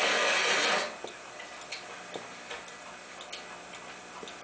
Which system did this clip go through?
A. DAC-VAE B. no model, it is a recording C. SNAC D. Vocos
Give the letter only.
B